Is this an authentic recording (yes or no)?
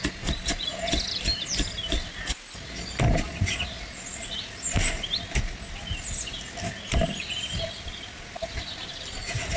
yes